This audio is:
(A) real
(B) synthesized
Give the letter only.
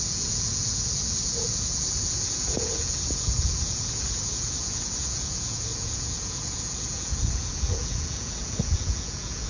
B